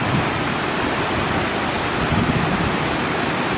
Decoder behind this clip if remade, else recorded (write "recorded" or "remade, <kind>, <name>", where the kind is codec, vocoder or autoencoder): recorded